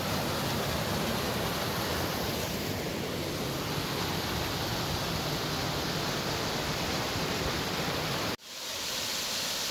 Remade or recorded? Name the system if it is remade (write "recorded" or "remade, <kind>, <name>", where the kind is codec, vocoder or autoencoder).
recorded